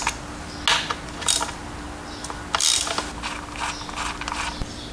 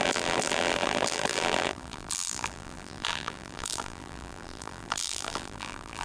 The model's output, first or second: second